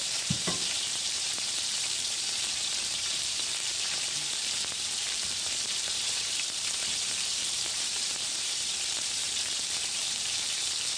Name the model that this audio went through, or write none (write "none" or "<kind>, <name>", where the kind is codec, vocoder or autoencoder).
vocoder, BigVGAN v2